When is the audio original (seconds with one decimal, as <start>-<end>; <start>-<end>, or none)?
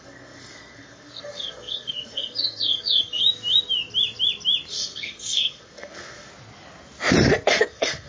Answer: 3.2-4.7; 6.3-7.5